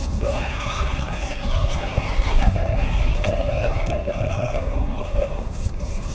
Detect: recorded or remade remade